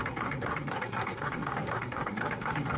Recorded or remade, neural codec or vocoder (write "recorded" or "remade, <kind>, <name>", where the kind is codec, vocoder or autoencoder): remade, codec, SNAC